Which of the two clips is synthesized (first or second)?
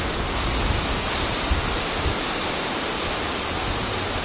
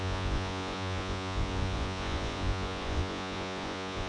second